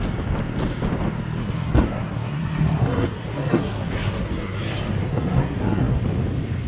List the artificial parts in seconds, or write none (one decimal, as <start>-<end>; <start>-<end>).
1.4-4.6; 5.1-6.0